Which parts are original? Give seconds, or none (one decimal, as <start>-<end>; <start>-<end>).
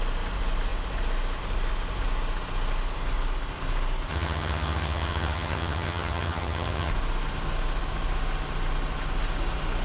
0.0-4.1; 6.9-9.8